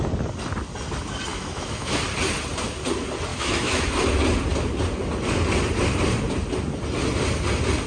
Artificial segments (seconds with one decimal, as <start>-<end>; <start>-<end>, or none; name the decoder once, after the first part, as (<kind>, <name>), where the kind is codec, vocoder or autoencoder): 1.3-2.0 (autoencoder, DAC-VAE); 3.3-3.8